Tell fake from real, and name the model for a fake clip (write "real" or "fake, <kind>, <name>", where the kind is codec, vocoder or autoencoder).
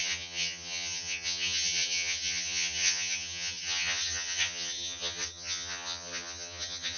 fake, vocoder, HiFi-GAN